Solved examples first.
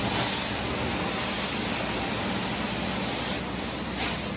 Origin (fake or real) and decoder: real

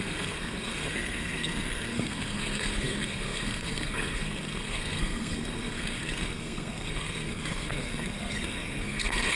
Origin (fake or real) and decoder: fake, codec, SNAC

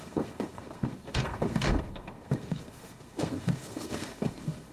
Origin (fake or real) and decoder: fake, codec, SNAC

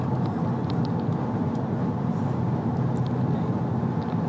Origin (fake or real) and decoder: real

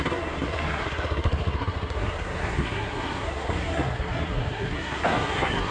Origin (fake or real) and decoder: fake, codec, SNAC